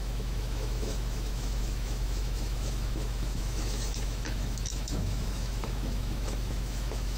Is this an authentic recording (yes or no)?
no